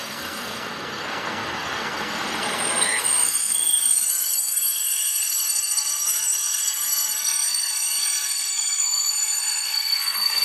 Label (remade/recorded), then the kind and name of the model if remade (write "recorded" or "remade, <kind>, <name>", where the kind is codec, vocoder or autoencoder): remade, codec, SNAC